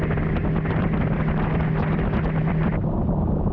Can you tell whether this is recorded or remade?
recorded